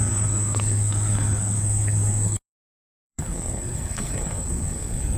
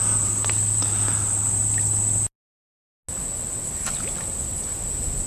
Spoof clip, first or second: first